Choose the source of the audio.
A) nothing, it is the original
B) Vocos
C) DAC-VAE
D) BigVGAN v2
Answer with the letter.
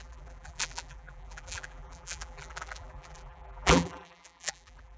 D